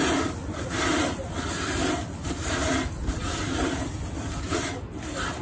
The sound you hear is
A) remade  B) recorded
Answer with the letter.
B